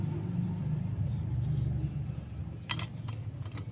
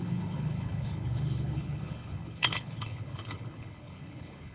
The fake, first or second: second